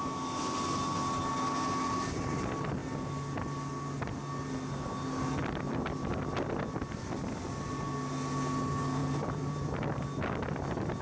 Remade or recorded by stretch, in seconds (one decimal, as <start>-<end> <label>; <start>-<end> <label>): 0.0-9.0 recorded; 9.0-10.0 remade; 10.0-11.0 recorded